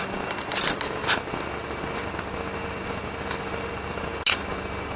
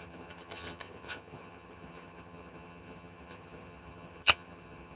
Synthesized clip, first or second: second